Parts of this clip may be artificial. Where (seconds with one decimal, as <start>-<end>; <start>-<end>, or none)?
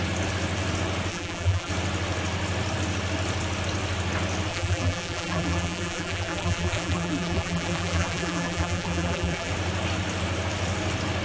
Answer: 1.1-1.7; 4.5-9.5